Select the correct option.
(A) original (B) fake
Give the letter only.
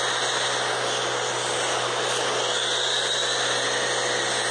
A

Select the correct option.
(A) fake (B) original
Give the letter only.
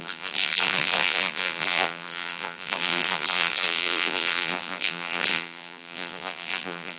A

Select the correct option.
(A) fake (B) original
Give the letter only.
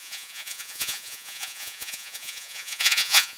A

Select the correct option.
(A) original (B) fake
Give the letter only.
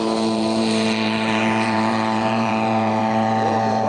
B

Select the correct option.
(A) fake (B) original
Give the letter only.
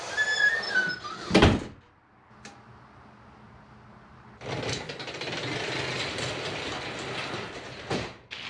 B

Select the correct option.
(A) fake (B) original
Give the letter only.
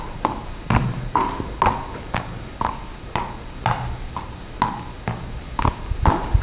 B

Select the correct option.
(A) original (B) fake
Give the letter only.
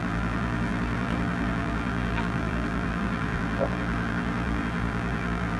B